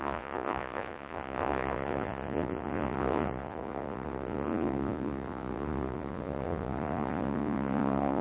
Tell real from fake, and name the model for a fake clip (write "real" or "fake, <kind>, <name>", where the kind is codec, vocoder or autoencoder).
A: fake, vocoder, Vocos